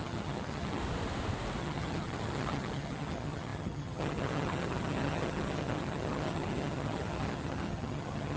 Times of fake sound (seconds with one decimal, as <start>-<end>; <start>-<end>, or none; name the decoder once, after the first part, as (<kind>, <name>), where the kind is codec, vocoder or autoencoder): 0.0-0.8 (vocoder, HiFi-GAN); 1.6-8.4